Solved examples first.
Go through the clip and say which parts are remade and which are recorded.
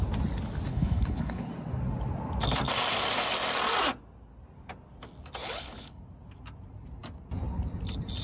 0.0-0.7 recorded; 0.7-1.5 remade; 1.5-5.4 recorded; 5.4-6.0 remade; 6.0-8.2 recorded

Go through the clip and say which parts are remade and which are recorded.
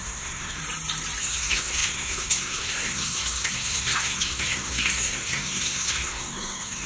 0.0-0.6 remade; 0.6-1.2 recorded; 1.2-6.9 remade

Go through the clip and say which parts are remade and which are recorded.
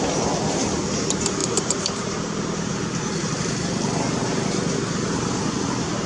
0.0-1.4 recorded; 1.4-2.7 remade; 2.7-4.2 recorded; 4.2-5.4 remade; 5.4-6.1 recorded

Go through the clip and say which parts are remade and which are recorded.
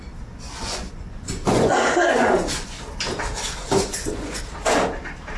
0.0-0.5 recorded; 0.5-2.8 remade; 2.8-3.6 recorded; 3.6-4.4 remade; 4.4-5.4 recorded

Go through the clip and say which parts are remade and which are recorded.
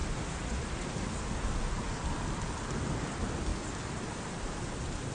0.0-5.1 recorded